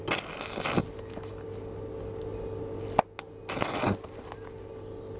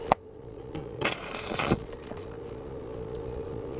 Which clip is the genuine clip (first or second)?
first